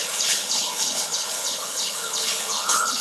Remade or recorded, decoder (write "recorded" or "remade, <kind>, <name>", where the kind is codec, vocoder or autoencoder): remade, codec, HILCodec